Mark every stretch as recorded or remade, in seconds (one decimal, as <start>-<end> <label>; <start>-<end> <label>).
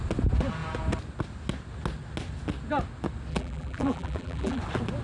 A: 0.0-3.3 recorded; 3.3-4.6 remade; 4.6-5.0 recorded